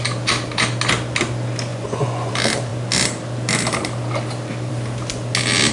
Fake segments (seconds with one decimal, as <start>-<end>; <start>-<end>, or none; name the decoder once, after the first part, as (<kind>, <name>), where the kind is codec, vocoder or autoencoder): 1.7-2.3 (vocoder, Vocos)